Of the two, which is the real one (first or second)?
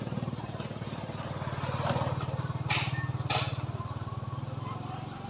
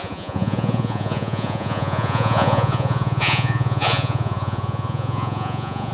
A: first